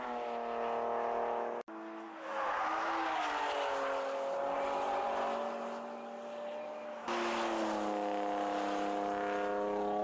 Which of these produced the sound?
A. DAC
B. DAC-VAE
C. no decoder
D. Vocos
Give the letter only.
C